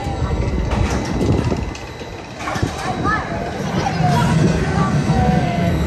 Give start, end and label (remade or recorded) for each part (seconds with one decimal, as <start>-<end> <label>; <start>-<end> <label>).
0.0-0.5 remade; 0.5-4.3 recorded; 4.3-5.9 remade